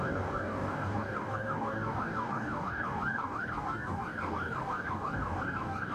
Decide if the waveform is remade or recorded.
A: remade